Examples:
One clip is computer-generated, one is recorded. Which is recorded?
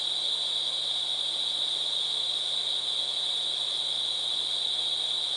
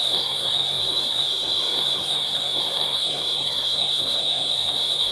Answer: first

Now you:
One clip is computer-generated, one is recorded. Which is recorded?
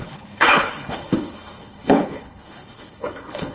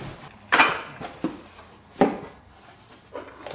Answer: second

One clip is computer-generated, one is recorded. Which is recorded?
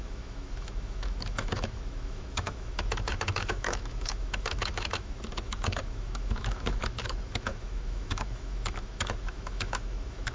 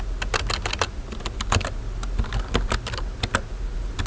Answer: second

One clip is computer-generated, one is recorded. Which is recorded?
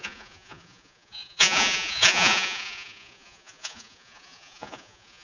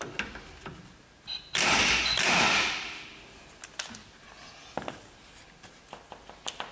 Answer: second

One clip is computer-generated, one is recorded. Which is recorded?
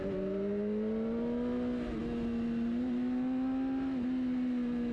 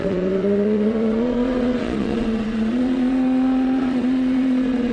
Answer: first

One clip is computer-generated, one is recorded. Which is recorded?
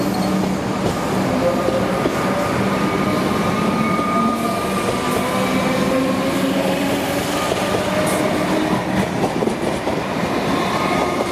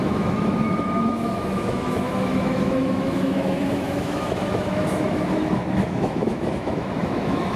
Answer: first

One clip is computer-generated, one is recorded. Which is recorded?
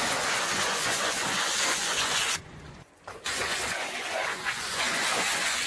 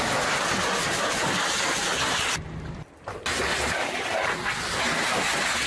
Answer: second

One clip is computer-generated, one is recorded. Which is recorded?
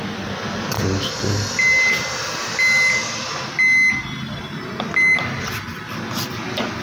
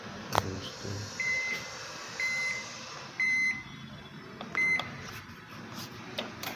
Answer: first